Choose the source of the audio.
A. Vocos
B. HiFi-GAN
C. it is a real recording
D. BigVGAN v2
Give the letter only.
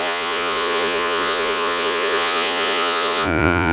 A